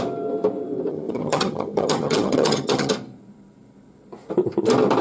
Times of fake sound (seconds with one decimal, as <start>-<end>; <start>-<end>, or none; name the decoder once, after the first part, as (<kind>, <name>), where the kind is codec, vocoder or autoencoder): 0.9-2.9 (vocoder, HiFi-GAN)